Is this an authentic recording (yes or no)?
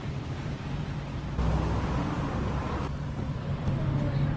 no